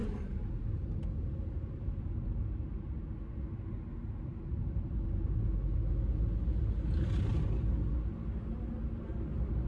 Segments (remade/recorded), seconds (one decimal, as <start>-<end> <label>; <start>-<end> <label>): 0.0-9.7 recorded